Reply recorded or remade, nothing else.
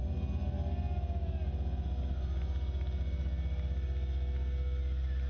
recorded